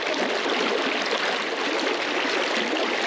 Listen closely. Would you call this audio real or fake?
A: real